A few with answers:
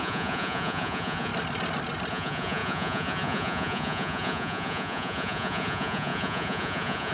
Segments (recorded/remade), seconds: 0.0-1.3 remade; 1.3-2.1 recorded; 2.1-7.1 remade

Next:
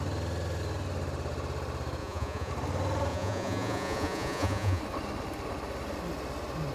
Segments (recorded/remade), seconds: 0.0-2.0 recorded; 2.0-2.5 remade; 2.5-3.1 recorded; 3.1-4.8 remade; 4.8-6.7 recorded

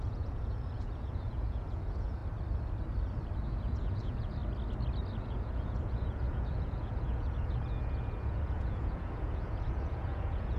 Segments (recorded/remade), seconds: 0.0-2.2 remade; 2.2-3.4 recorded; 3.4-4.4 remade; 4.4-5.1 recorded; 5.1-10.6 remade

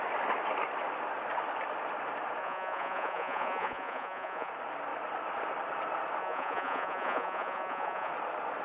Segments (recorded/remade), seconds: 0.0-2.4 recorded; 2.4-4.5 remade; 4.5-6.2 recorded; 6.2-8.1 remade; 8.1-8.6 recorded